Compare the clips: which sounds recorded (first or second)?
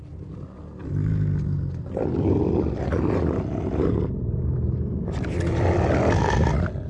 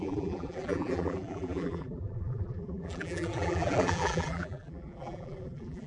first